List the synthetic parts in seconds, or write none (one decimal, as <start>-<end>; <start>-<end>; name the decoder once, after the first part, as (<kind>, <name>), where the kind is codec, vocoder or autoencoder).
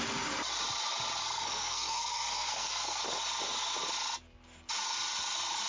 1.2-3.0 (codec, SNAC)